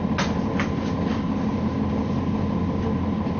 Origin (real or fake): real